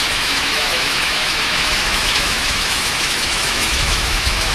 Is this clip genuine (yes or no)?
no